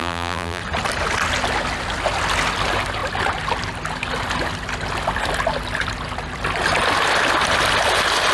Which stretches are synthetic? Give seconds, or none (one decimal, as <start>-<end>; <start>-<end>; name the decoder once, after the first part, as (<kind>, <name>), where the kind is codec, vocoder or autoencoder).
0.0-0.6 (vocoder, BigVGAN v2)